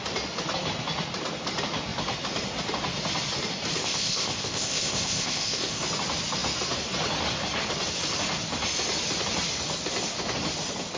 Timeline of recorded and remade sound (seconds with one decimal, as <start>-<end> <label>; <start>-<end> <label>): 0.0-3.8 recorded; 3.8-5.8 remade; 5.8-11.0 recorded